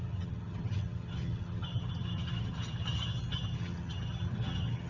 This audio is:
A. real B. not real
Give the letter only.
B